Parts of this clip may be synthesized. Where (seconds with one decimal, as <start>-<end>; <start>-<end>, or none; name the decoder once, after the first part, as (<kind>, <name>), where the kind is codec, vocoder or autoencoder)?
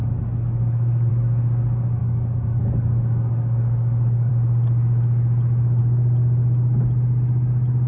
0.0-1.1 (codec, DAC); 2.0-4.3